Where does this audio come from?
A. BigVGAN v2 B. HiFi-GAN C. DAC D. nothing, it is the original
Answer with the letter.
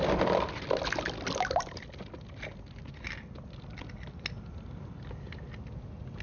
D